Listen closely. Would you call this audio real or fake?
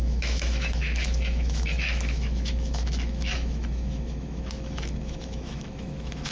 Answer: fake